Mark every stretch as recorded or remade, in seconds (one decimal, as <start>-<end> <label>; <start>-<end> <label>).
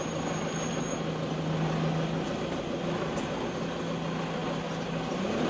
0.0-5.5 recorded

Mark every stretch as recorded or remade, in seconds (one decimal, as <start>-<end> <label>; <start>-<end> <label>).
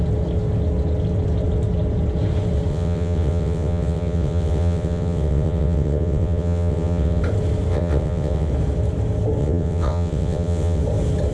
0.0-2.7 recorded; 2.7-7.2 remade; 7.2-7.7 recorded; 7.7-8.5 remade; 8.5-9.4 recorded; 9.4-10.8 remade; 10.8-11.3 recorded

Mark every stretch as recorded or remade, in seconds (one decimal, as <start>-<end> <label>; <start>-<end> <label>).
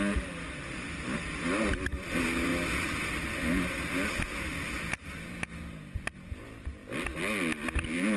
0.0-8.2 recorded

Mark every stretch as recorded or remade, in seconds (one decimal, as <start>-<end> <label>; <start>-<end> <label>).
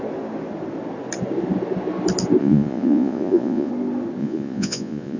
0.0-2.4 recorded; 2.4-3.7 remade; 3.7-4.2 recorded; 4.2-5.2 remade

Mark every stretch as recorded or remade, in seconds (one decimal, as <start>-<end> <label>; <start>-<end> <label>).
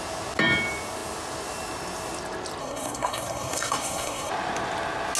0.0-2.6 recorded; 2.6-4.3 remade; 4.3-5.2 recorded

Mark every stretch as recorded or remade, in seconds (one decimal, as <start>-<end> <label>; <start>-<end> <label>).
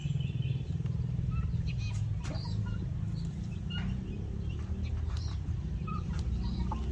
0.0-6.9 recorded